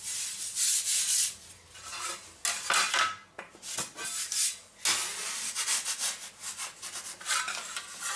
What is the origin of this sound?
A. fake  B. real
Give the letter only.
B